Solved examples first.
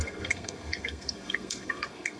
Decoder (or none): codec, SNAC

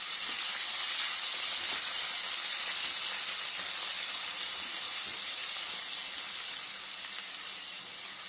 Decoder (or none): none